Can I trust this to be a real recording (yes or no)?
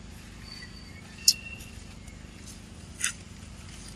yes